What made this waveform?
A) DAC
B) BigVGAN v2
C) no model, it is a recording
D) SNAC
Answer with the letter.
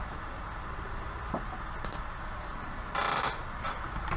C